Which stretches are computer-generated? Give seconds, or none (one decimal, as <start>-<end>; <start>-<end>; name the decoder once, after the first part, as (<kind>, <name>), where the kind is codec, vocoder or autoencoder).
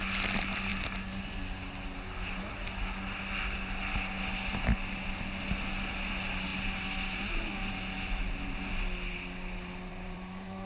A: 9.9-10.7 (vocoder, BigVGAN v2)